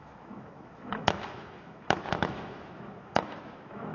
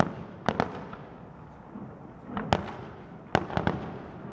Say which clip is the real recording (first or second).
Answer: second